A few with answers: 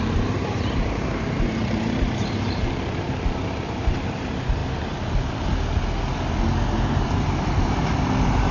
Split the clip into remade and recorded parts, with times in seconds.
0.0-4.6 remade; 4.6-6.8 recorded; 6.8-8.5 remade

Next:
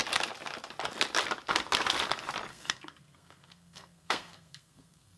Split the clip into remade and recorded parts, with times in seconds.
0.0-2.5 recorded; 2.5-5.2 remade